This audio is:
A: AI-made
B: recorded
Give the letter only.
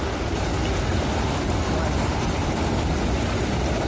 B